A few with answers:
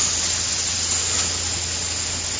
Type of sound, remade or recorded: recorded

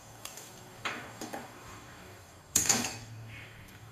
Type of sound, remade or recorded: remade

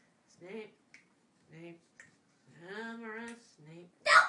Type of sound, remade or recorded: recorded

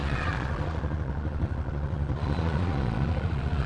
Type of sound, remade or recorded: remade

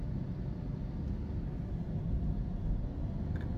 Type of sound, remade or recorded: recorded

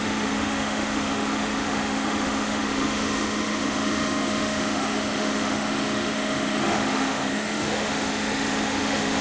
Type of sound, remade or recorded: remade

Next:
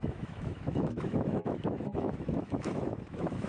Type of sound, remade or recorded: remade